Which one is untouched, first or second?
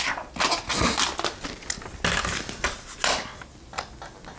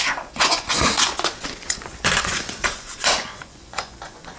first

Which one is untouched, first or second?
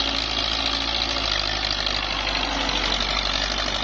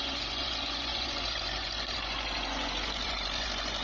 first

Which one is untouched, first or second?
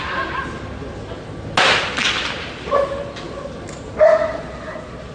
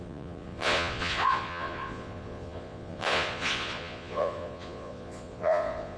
first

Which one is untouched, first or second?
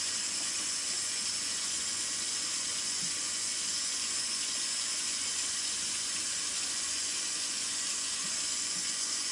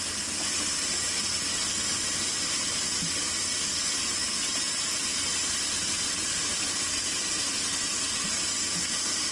second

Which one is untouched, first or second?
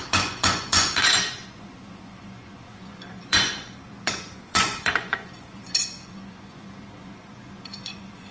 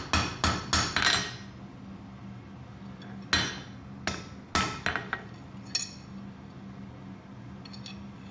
second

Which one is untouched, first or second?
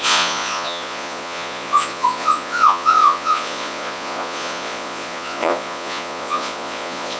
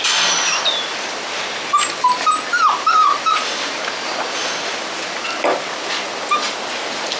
second